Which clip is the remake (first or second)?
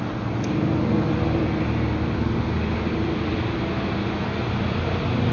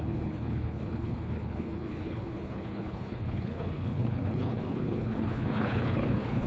second